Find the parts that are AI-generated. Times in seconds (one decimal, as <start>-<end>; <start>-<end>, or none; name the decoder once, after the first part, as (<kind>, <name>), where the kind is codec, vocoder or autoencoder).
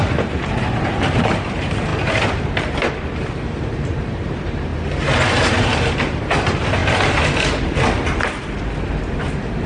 0.0-4.7 (vocoder, BigVGAN v2); 5.4-6.8; 9.0-9.7